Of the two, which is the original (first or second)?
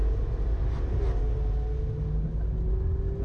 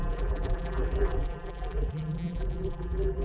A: first